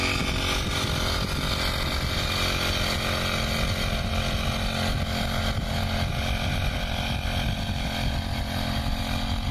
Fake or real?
real